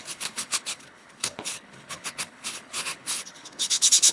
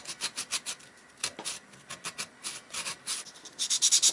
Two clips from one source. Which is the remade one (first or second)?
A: first